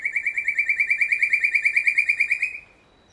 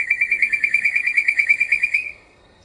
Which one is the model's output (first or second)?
second